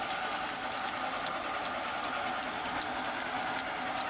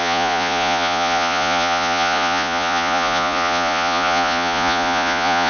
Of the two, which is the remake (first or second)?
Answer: second